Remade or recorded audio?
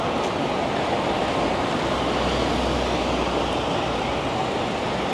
recorded